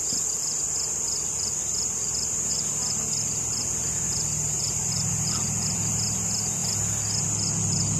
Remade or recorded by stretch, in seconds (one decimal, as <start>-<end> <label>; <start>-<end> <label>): 0.0-8.0 remade

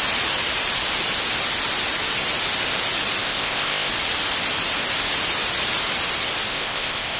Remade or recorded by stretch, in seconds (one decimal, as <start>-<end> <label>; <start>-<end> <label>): 0.0-3.2 recorded; 3.2-3.9 remade; 3.9-6.5 recorded; 6.5-7.2 remade